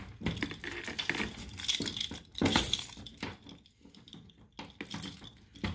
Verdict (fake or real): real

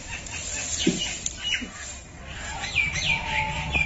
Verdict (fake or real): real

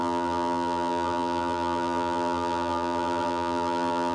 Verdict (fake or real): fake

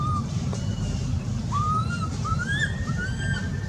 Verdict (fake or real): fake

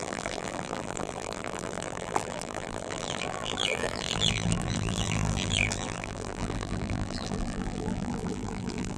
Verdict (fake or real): fake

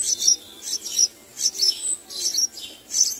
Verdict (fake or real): real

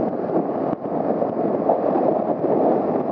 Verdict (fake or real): real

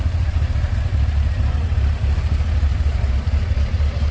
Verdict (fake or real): fake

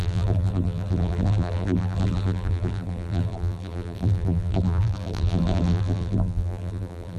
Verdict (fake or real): fake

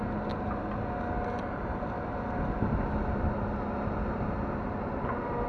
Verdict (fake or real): real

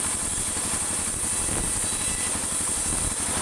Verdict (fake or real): real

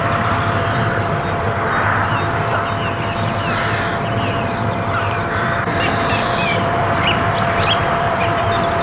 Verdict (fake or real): fake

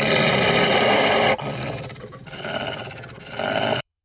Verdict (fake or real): fake